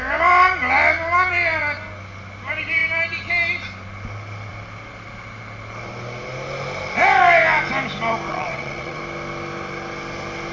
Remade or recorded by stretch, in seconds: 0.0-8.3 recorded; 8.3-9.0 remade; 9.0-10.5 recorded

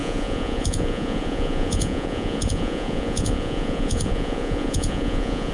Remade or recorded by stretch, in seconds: 0.0-5.5 remade

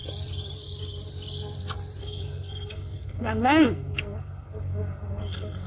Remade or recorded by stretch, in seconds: 0.0-2.0 recorded; 2.0-5.7 remade

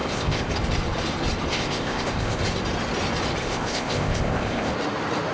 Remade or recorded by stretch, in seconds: 0.0-0.5 remade; 0.5-1.5 recorded; 1.5-2.4 remade; 2.4-3.4 recorded; 3.4-4.7 remade; 4.7-5.3 recorded

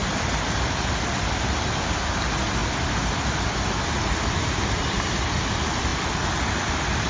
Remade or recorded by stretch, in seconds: 0.0-7.1 recorded